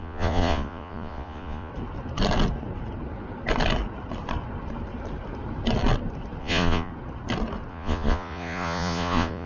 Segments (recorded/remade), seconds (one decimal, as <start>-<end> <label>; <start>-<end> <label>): 0.0-1.7 remade; 1.7-6.4 recorded; 6.4-6.9 remade; 6.9-7.7 recorded; 7.7-9.5 remade